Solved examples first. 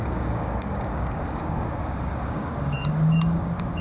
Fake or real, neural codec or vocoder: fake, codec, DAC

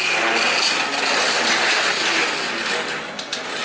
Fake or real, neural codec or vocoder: real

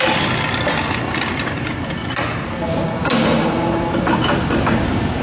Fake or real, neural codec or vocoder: real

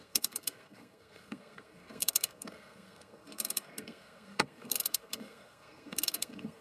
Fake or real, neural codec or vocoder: fake, codec, SNAC